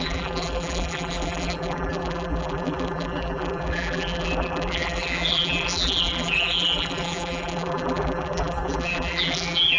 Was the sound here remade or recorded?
remade